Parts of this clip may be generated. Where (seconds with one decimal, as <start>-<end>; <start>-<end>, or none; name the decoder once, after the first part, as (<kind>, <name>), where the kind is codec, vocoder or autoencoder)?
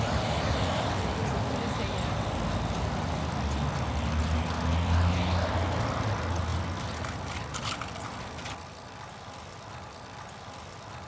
none